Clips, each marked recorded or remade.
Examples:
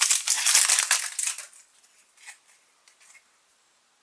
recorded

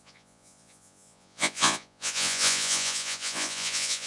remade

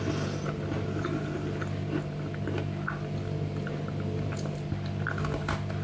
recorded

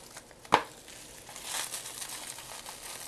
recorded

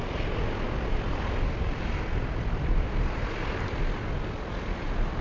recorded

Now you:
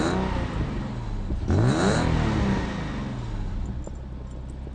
recorded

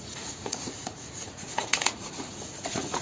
remade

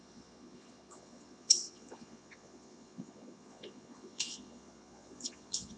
remade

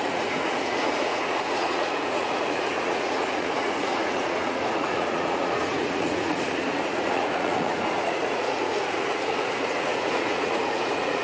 remade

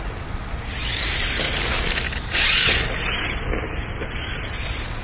recorded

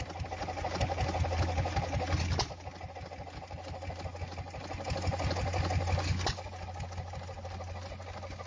recorded